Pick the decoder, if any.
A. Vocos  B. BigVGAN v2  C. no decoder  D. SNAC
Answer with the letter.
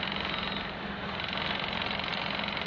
C